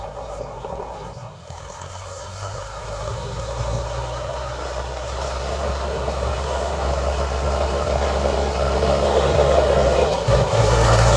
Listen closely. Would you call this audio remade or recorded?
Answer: remade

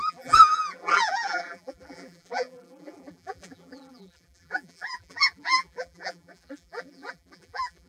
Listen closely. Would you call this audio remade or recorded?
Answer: remade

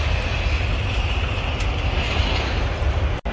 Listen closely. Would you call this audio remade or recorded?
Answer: recorded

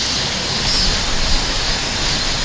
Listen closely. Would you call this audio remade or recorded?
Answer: recorded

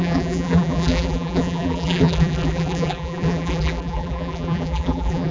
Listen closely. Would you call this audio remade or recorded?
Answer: remade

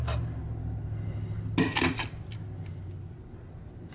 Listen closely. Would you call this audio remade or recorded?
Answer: recorded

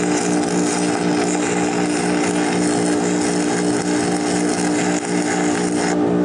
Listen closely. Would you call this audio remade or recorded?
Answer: recorded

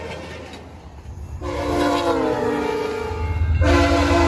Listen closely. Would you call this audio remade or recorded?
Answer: recorded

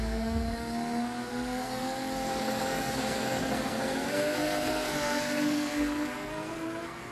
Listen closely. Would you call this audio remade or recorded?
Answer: remade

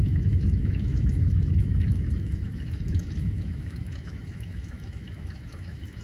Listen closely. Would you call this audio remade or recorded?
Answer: remade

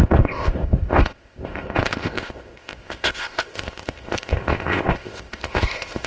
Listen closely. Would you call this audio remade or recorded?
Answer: remade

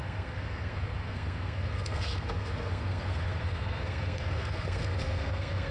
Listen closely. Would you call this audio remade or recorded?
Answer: remade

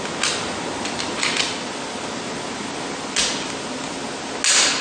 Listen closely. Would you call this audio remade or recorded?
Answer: recorded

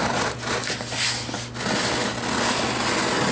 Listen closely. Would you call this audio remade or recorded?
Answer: recorded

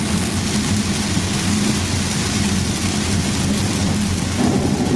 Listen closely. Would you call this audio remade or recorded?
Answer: recorded